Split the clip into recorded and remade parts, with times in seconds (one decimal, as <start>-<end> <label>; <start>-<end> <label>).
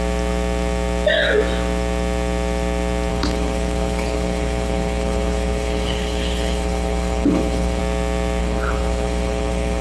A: 0.0-3.1 recorded; 3.1-7.8 remade; 7.8-8.4 recorded; 8.4-9.8 remade